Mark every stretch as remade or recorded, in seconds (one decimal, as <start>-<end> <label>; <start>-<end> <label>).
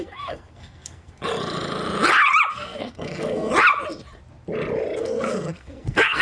0.0-1.2 remade; 1.2-2.5 recorded; 2.5-3.5 remade; 3.5-5.0 recorded; 5.0-6.2 remade